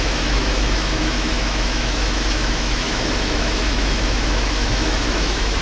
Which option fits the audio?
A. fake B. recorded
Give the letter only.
A